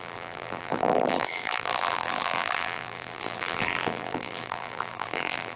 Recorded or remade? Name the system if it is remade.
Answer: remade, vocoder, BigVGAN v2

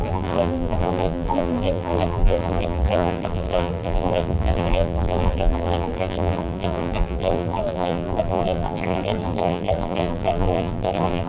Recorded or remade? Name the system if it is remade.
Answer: remade, vocoder, BigVGAN v2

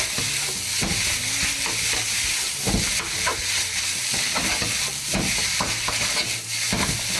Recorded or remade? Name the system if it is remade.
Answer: recorded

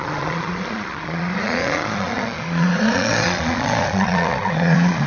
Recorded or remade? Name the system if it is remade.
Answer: remade, vocoder, Vocos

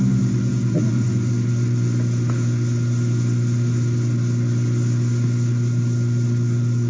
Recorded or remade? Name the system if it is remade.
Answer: recorded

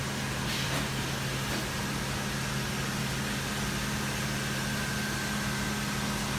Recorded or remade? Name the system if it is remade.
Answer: recorded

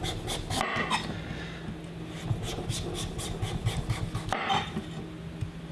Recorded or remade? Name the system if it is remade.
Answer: recorded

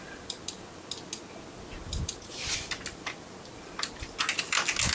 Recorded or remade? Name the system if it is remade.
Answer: recorded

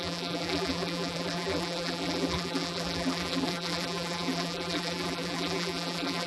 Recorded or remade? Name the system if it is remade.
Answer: remade, vocoder, BigVGAN v2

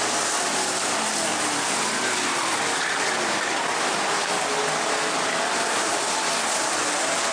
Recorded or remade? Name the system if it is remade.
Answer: recorded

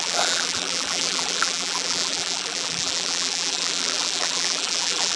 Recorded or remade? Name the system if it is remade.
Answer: remade, vocoder, BigVGAN v2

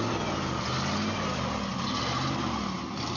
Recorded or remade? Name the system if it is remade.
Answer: recorded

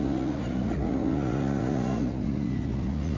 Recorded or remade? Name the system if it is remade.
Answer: remade, vocoder, Vocos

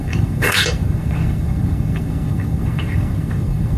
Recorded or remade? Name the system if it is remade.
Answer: remade, codec, SNAC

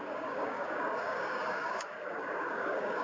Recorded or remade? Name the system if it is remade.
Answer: remade, codec, DAC